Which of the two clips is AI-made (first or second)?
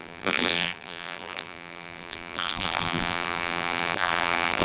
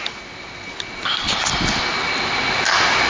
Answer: first